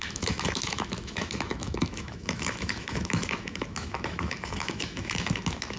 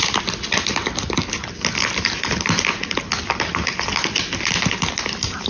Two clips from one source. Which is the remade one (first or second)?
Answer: first